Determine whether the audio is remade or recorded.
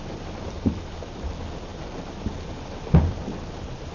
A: recorded